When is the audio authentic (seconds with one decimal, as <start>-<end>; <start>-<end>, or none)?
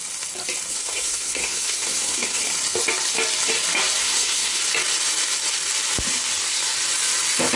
0.0-0.7; 2.4-4.0; 4.6-7.6